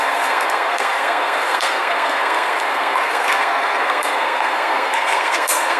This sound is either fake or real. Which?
fake